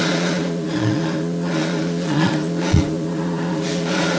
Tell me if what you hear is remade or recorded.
remade